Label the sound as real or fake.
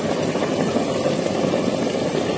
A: real